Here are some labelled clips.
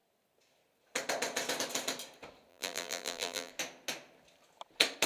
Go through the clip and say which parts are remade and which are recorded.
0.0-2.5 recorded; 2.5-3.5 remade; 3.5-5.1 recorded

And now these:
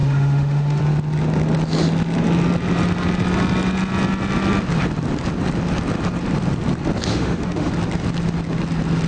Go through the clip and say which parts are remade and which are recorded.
0.0-0.8 remade; 0.8-7.1 recorded; 7.1-7.7 remade; 7.7-9.1 recorded

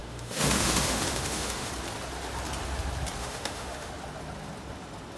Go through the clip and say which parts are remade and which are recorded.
0.0-1.7 remade; 1.7-3.2 recorded; 3.2-3.9 remade; 3.9-5.2 recorded

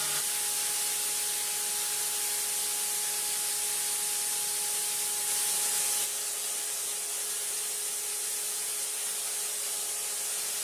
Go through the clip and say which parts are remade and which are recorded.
0.0-10.6 recorded

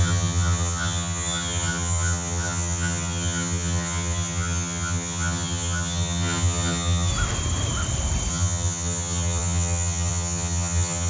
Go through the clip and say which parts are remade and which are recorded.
0.0-7.1 remade; 7.1-8.3 recorded; 8.3-11.1 remade

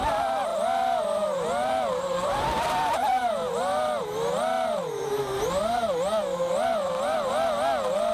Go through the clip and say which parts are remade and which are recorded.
0.0-0.5 recorded; 0.5-5.4 remade; 5.4-6.7 recorded; 6.7-7.3 remade; 7.3-8.1 recorded

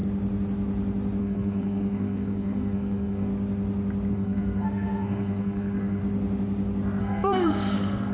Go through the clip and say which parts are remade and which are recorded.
0.0-1.2 recorded; 1.2-3.3 remade; 3.3-4.1 recorded; 4.1-6.0 remade; 6.0-7.0 recorded; 7.0-8.1 remade

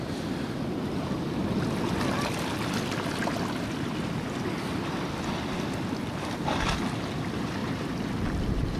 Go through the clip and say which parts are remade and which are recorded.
0.0-8.8 recorded